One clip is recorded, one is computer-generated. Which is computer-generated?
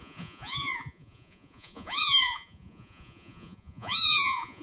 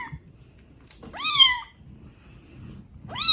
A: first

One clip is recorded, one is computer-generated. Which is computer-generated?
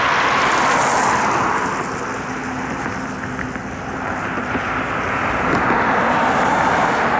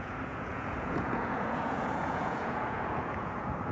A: second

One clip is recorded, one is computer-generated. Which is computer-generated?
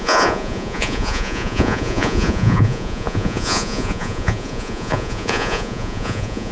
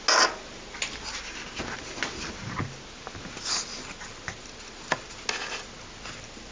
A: first